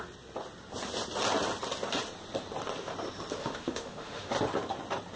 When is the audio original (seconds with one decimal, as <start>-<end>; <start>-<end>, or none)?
0.0-3.4; 4.3-5.2